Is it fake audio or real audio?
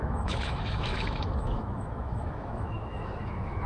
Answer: fake